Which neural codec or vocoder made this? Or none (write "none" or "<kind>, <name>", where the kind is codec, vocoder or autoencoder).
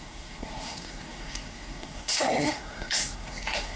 codec, SNAC